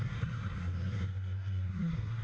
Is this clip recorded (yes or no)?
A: no